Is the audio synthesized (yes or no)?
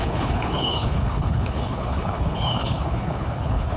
yes